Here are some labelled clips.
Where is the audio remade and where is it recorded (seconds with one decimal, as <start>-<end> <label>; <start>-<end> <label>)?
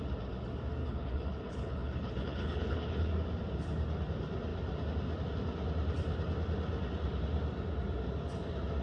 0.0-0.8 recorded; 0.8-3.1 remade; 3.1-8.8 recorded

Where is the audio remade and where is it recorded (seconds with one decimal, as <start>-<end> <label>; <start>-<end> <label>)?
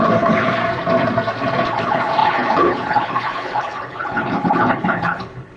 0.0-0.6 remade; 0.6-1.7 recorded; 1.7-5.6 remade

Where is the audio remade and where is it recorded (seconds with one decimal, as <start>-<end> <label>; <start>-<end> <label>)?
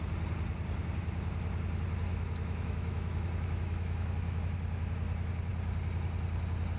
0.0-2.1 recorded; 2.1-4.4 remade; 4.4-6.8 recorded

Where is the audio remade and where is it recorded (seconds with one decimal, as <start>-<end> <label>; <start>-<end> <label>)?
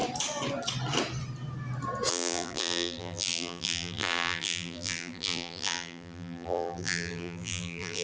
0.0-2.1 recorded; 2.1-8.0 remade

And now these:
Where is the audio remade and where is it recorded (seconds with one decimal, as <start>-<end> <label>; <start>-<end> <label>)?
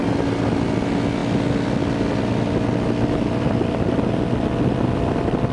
0.0-5.5 recorded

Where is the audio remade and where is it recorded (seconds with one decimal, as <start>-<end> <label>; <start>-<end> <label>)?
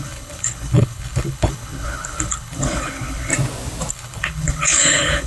0.0-3.3 remade; 3.3-3.9 recorded; 3.9-5.3 remade